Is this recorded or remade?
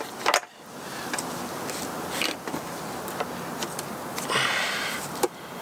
recorded